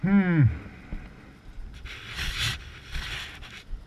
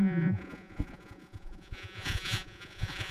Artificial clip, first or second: second